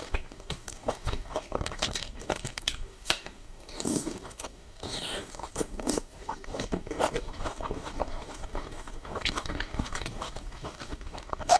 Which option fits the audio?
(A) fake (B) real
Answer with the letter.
A